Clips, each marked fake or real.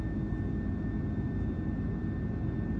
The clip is real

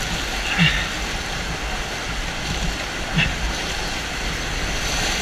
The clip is real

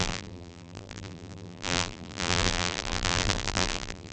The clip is fake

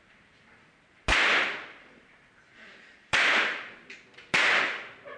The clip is fake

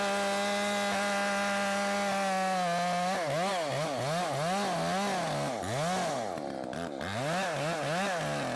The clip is real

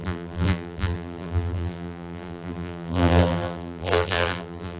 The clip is fake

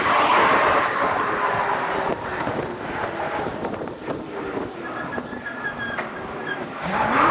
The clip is fake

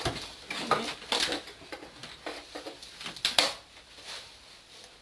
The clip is real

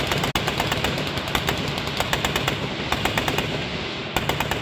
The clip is real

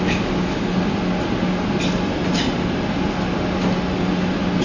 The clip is real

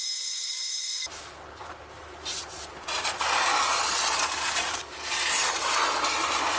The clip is fake